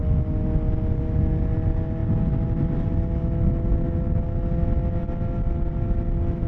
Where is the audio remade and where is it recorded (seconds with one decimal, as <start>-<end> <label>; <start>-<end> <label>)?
0.0-6.5 recorded